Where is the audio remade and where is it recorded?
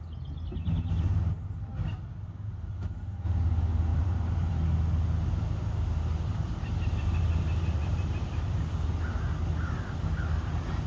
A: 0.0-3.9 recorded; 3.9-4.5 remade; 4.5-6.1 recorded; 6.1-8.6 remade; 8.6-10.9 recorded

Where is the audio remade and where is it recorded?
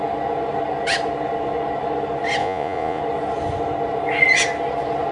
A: 0.0-2.4 recorded; 2.4-3.0 remade; 3.0-5.1 recorded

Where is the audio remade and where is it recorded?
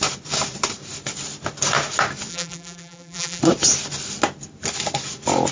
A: 0.0-2.3 recorded; 2.3-3.4 remade; 3.4-5.5 recorded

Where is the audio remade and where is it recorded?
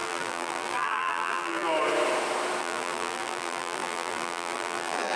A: 0.0-1.7 remade; 1.7-2.6 recorded; 2.6-5.2 remade